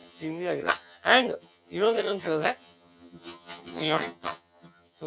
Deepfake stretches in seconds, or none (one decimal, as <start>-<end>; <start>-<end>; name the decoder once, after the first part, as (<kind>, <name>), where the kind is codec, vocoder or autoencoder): 0.0-5.1 (vocoder, HiFi-GAN)

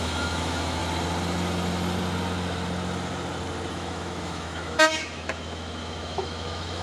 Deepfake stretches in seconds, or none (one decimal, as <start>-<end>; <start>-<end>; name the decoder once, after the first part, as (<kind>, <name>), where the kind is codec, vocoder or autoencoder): 0.0-0.8 (autoencoder, DAC-VAE); 3.7-6.8

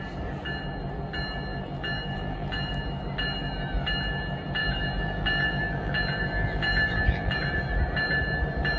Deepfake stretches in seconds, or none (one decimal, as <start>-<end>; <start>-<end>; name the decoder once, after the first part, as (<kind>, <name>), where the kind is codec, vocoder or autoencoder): 1.5-2.7 (vocoder, BigVGAN v2); 4.6-7.4

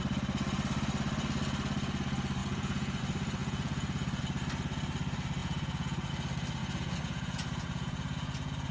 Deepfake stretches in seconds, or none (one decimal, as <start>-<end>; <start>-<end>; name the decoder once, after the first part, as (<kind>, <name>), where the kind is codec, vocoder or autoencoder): 2.4-3.0 (vocoder, Vocos); 3.4-4.2; 5.4-6.1; 6.6-8.7

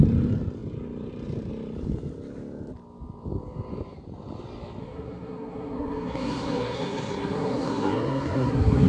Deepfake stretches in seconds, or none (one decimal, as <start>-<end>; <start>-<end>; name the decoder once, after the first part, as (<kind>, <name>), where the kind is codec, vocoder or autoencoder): 4.8-8.9 (codec, SNAC)

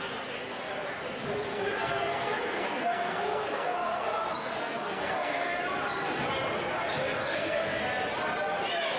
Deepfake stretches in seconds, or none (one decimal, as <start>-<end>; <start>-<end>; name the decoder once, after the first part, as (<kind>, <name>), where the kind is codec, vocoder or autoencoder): 1.5-5.6 (codec, SNAC); 7.2-7.8

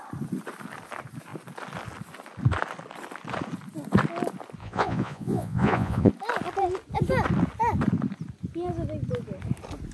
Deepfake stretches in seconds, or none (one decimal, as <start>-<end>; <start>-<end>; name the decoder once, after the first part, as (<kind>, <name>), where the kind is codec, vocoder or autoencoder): 4.6-6.1 (vocoder, Vocos)